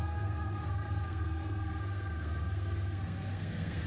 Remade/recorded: remade